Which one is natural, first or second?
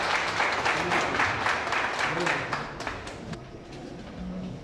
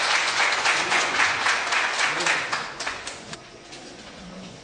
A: first